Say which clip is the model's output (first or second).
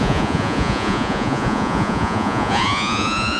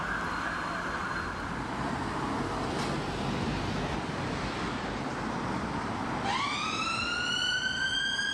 first